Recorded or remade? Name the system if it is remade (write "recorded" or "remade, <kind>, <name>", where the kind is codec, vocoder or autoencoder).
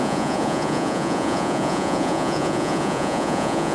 remade, vocoder, Vocos